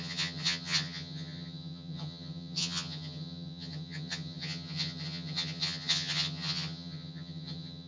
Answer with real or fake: fake